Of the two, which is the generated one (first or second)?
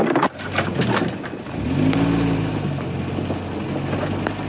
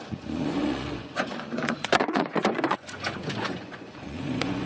second